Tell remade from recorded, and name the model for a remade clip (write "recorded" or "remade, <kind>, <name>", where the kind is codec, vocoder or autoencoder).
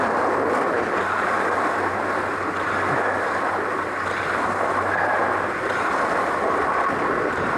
recorded